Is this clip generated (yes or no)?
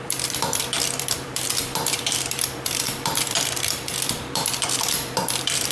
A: yes